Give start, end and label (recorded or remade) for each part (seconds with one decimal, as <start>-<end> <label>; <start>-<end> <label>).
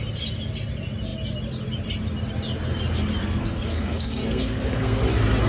0.0-3.2 recorded; 3.2-5.0 remade; 5.0-5.5 recorded